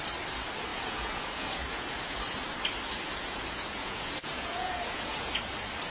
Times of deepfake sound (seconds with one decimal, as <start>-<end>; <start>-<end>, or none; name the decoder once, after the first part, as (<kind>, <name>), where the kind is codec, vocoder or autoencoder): 0.7-2.2 (vocoder, Vocos); 3.1-5.4